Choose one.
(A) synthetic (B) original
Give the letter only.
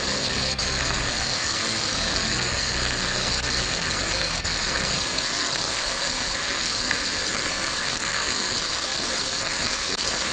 A